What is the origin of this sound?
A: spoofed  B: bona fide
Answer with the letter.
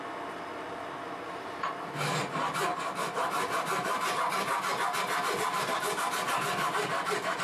B